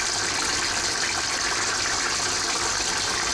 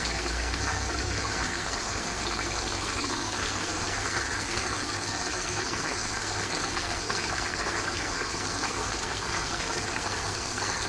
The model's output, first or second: second